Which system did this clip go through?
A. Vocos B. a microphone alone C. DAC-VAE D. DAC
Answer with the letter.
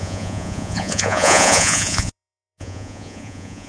A